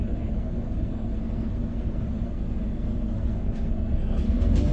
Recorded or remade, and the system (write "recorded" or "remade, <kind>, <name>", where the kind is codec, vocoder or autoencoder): remade, codec, SNAC